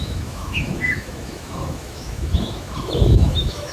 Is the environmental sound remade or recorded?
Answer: remade